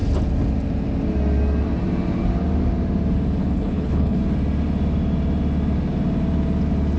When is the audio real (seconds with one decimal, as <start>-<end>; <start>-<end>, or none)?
0.0-3.4; 4.2-7.0